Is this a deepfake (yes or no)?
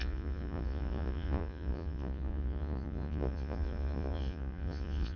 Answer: yes